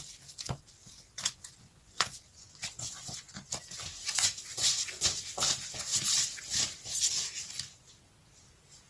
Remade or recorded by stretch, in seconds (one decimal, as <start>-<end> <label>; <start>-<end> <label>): 0.0-0.8 recorded; 0.8-3.5 remade; 3.5-4.0 recorded; 4.0-5.2 remade; 5.2-8.9 recorded